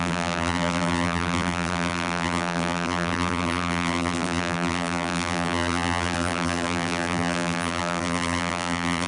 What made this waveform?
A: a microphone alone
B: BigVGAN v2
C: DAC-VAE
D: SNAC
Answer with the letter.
B